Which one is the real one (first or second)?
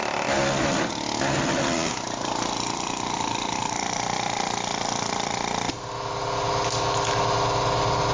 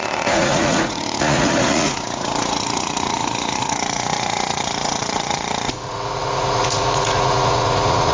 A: first